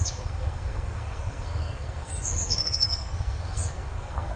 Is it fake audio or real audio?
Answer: fake